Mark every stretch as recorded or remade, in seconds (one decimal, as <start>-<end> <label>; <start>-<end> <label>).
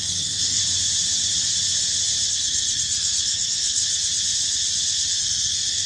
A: 0.0-0.6 remade; 0.6-2.3 recorded; 2.3-3.8 remade; 3.8-5.2 recorded; 5.2-5.9 remade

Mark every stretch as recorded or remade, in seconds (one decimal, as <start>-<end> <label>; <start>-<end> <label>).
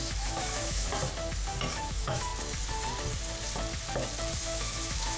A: 0.0-0.9 remade; 0.9-1.7 recorded; 1.7-2.3 remade; 2.3-4.4 recorded; 4.4-5.2 remade